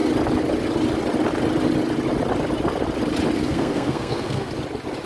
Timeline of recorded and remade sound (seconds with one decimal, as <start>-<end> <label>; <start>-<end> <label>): 0.0-3.4 recorded; 3.4-4.5 remade; 4.5-5.1 recorded